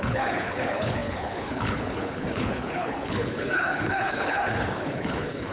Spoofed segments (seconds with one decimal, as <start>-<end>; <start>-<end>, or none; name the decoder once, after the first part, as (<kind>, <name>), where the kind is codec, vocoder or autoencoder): 0.0-5.5 (codec, HILCodec)